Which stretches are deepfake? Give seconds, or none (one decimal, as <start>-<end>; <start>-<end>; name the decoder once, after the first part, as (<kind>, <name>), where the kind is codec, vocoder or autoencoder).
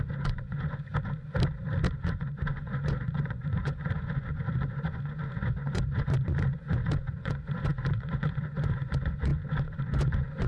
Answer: 0.0-0.9 (vocoder, Vocos); 1.9-10.5